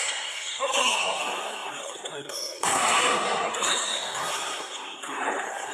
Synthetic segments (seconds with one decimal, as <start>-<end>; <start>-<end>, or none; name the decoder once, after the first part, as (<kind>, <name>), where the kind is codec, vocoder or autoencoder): 0.0-5.7 (codec, SNAC)